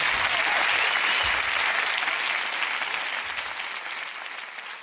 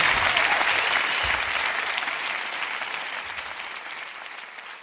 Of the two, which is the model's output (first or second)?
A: second